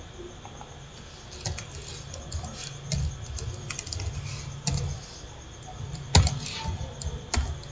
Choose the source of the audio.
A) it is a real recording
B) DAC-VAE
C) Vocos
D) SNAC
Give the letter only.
A